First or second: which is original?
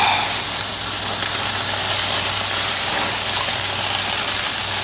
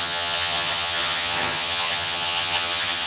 first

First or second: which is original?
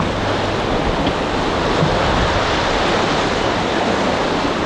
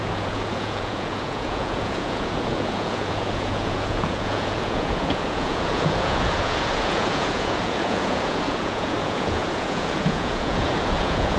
first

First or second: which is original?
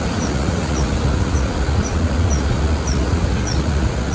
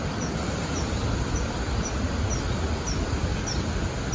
second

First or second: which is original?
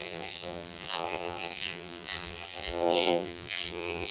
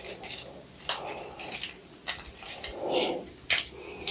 second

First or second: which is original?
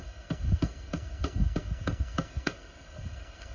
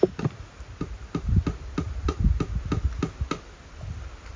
second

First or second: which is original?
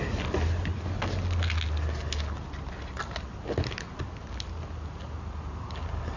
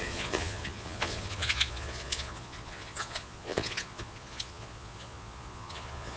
first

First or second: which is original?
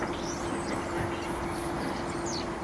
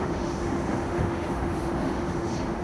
first